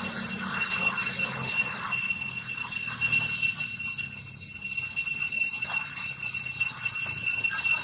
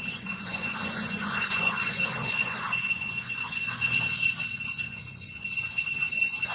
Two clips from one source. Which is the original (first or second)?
first